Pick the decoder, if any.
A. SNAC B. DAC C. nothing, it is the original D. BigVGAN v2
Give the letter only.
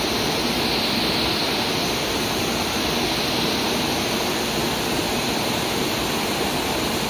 C